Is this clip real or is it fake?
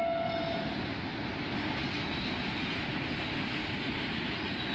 real